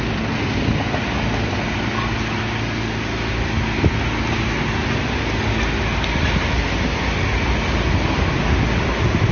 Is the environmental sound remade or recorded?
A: recorded